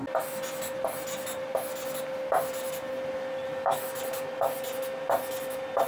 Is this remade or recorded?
recorded